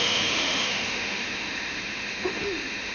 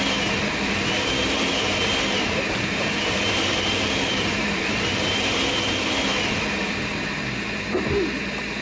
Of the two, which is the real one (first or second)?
second